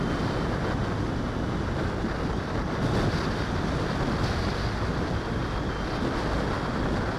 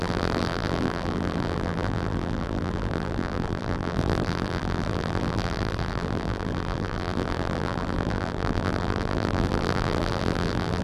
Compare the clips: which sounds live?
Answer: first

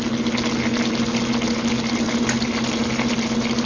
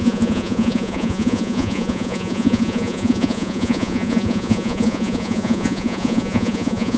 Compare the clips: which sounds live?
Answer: first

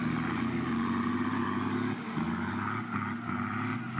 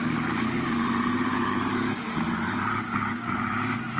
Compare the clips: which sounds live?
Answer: first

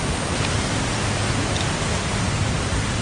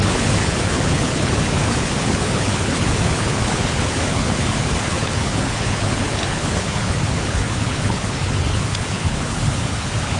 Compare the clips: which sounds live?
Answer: first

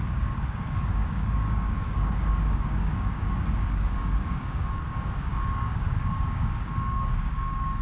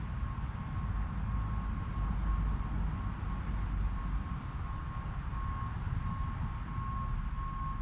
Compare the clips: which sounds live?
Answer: second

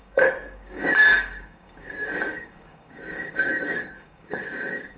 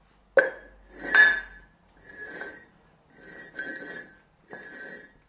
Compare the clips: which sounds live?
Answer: second